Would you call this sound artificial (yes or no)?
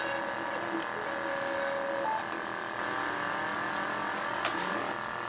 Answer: no